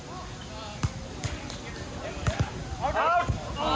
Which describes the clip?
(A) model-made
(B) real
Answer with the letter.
B